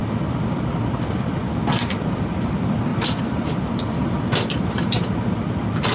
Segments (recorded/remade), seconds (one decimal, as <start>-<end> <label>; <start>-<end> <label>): 0.0-2.9 recorded; 2.9-5.1 remade; 5.1-5.9 recorded